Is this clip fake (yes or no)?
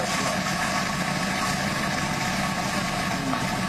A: no